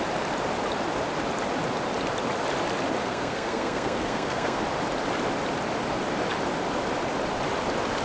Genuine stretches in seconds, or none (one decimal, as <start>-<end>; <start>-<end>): 0.0-3.0; 4.6-8.0